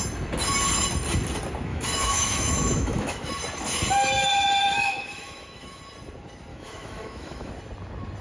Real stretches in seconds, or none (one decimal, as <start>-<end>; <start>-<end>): 0.0-1.7; 3.3-4.6; 5.8-6.5; 7.5-8.2